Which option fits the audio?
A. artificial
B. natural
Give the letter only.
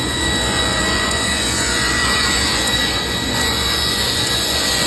A